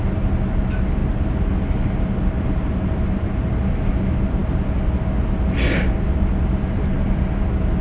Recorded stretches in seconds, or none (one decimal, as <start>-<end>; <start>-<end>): 0.0-7.8